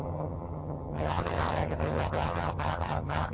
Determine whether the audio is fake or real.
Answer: fake